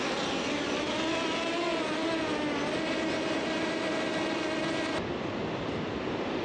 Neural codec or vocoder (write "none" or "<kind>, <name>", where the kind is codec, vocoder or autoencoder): none